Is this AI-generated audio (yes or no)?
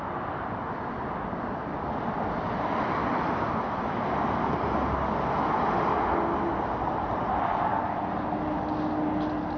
no